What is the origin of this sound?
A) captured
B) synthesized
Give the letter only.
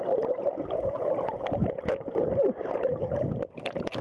B